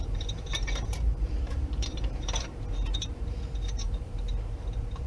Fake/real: fake